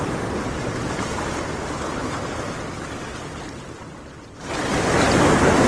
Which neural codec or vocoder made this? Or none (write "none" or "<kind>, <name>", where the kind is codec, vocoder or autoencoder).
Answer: none